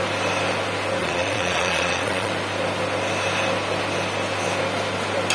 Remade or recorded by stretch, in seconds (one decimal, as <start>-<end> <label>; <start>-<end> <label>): 0.0-1.0 recorded; 1.0-2.3 remade; 2.3-5.3 recorded